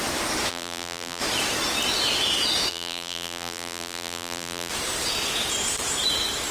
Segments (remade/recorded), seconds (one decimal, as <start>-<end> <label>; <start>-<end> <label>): 0.0-0.5 recorded; 0.5-1.2 remade; 1.2-2.7 recorded; 2.7-4.7 remade; 4.7-6.5 recorded